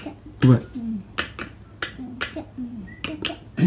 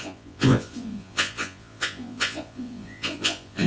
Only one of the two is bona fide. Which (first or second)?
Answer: first